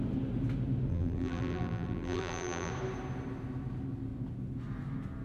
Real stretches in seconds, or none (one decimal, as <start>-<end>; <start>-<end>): 0.0-0.9; 2.7-5.2